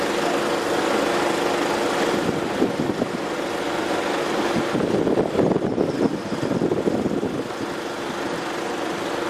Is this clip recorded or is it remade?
recorded